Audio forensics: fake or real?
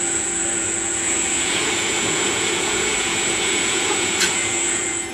fake